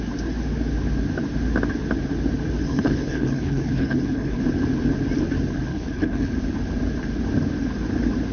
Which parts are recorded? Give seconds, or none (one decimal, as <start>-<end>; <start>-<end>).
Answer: 0.0-2.7; 4.4-5.7; 6.3-8.3